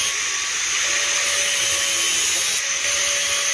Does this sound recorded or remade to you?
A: recorded